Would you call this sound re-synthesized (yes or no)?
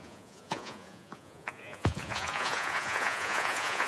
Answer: yes